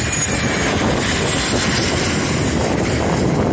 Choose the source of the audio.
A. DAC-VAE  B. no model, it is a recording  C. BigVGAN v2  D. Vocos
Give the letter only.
B